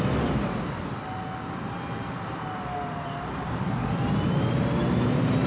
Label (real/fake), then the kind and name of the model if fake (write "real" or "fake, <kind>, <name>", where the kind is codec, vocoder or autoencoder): real